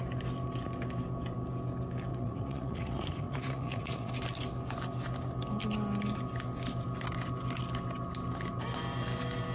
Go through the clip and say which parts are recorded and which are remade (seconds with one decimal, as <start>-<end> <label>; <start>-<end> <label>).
0.0-2.1 recorded; 2.1-4.1 remade; 4.1-9.5 recorded